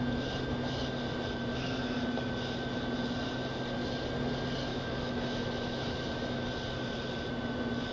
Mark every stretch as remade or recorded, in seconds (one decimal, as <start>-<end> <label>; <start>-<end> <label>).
0.0-4.7 recorded; 4.7-6.5 remade; 6.5-7.9 recorded